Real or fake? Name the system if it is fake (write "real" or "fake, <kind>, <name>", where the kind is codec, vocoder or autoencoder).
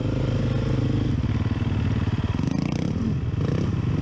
real